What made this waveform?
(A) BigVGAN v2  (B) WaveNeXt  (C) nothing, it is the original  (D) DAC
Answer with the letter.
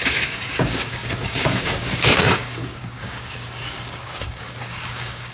D